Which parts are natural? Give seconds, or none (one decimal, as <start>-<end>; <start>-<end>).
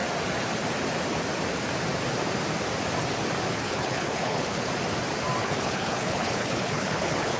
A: 0.0-3.5; 4.7-5.4